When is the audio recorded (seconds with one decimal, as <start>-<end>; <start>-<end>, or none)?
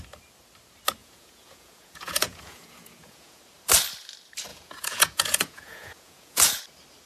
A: 0.0-1.0; 3.4-4.5; 6.6-7.1